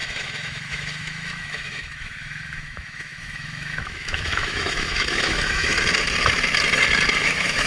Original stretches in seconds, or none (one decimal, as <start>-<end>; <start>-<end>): 5.7-7.2